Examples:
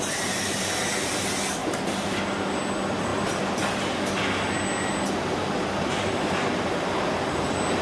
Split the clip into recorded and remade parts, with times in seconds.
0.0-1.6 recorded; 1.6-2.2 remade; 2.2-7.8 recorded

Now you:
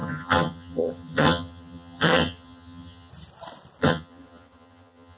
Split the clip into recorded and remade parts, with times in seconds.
0.0-3.1 remade; 3.1-3.8 recorded; 3.8-5.2 remade

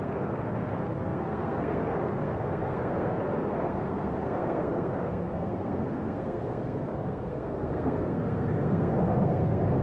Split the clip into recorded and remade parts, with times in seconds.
0.0-9.8 remade

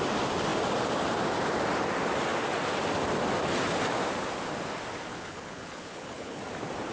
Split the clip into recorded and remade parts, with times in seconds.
0.0-5.1 recorded; 5.1-6.4 remade; 6.4-6.9 recorded

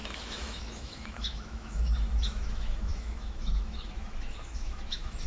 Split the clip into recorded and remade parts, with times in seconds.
0.0-5.3 remade

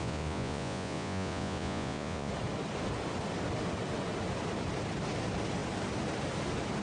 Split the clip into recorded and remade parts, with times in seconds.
0.0-2.3 remade; 2.3-6.8 recorded

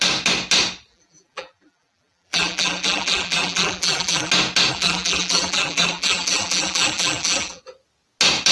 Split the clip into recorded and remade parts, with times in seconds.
0.0-0.9 recorded; 0.9-4.3 remade; 4.3-4.7 recorded; 4.7-7.6 remade; 7.6-8.5 recorded

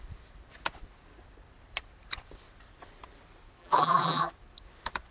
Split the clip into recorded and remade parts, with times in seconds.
0.0-3.6 recorded; 3.6-4.3 remade; 4.3-5.1 recorded